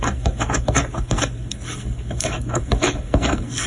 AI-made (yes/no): yes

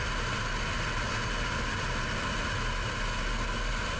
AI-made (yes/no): no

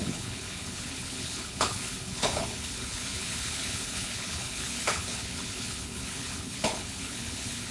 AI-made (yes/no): yes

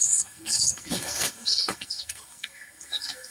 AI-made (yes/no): yes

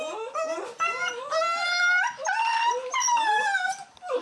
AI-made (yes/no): no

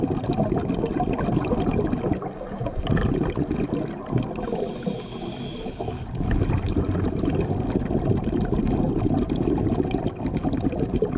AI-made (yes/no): no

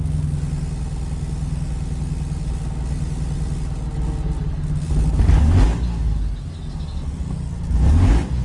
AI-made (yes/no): no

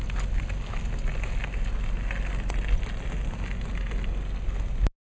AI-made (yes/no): no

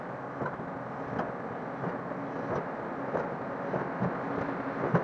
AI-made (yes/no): no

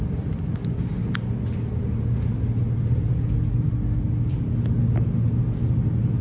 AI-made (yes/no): no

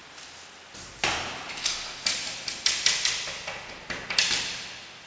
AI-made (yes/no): no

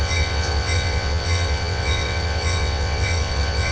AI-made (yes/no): yes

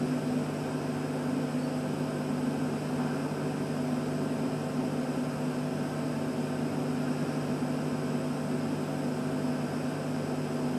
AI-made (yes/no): no